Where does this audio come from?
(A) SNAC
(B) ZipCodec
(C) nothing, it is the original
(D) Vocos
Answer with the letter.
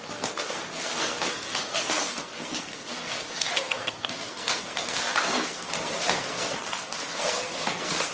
A